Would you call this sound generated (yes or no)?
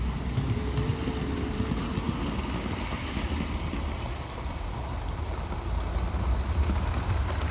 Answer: no